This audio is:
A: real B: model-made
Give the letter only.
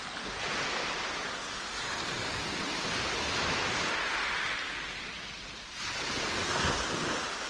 A